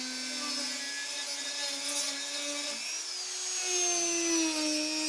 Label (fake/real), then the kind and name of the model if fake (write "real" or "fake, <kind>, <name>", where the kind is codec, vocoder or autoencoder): real